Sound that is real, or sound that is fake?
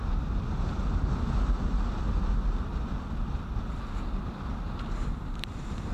real